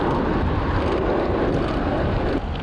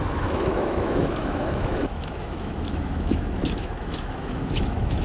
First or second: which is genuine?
first